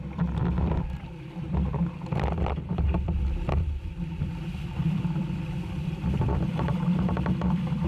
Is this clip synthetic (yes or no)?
yes